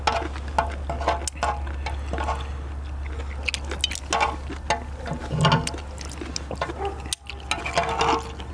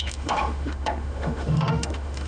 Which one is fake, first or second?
second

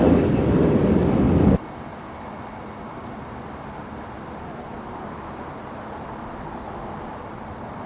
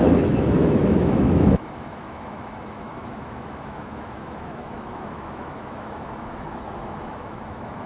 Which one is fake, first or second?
second